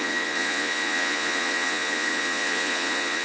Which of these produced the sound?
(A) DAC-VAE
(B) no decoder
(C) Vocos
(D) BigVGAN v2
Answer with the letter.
C